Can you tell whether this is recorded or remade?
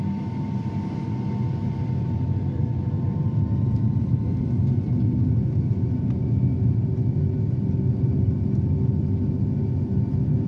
recorded